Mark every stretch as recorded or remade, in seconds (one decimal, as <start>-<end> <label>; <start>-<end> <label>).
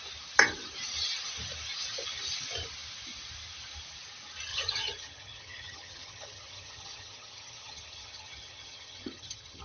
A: 0.0-4.5 recorded; 4.5-9.6 remade